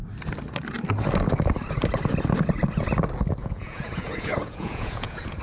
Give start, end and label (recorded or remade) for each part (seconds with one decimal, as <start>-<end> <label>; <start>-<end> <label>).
0.0-3.4 recorded; 3.4-5.4 remade

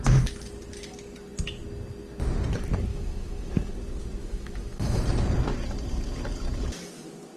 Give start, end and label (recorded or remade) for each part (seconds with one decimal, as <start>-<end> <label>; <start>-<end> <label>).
0.0-2.9 recorded; 2.9-3.5 remade; 3.5-4.2 recorded; 4.2-5.0 remade; 5.0-7.4 recorded

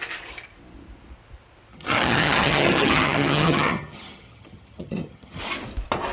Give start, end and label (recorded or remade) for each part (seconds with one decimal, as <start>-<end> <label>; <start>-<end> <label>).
0.0-1.7 recorded; 1.7-5.4 remade; 5.4-6.1 recorded

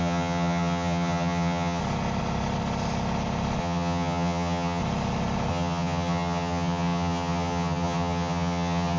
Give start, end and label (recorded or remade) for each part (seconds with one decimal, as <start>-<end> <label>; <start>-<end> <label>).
0.0-1.8 remade; 1.8-3.6 recorded; 3.6-4.8 remade; 4.8-5.5 recorded; 5.5-9.0 remade

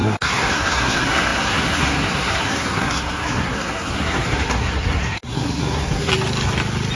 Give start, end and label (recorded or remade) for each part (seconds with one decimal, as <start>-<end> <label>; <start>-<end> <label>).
0.0-6.1 remade; 6.1-7.0 recorded

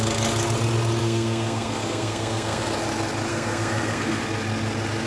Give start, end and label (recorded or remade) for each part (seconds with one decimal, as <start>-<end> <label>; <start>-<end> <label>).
0.0-1.0 recorded; 1.0-2.6 remade; 2.6-3.3 recorded; 3.3-4.2 remade; 4.2-5.1 recorded

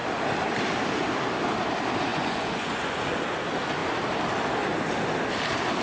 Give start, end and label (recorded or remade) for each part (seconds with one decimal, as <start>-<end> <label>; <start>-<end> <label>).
0.0-2.1 recorded; 2.1-3.0 remade; 3.0-5.8 recorded

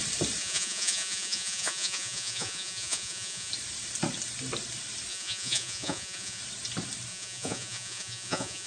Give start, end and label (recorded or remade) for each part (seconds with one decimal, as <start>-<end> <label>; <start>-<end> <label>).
0.0-0.4 recorded; 0.4-3.5 remade; 3.5-5.1 recorded; 5.1-6.4 remade; 6.4-7.1 recorded; 7.1-8.7 remade